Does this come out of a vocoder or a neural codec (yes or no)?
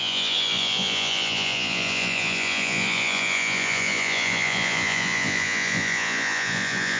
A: yes